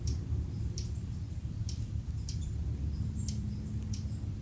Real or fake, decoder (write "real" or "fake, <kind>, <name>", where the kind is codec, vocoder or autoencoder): fake, vocoder, BigVGAN v2